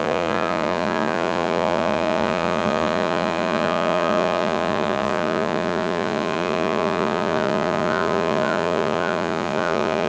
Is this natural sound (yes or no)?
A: no